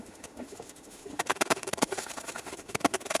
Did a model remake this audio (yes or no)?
yes